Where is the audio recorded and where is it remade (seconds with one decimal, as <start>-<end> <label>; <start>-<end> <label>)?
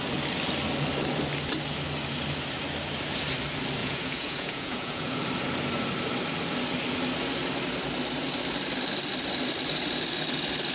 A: 0.0-3.8 recorded; 3.8-5.2 remade; 5.2-10.7 recorded